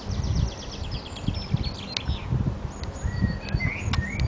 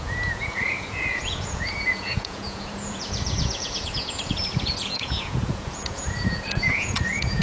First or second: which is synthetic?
second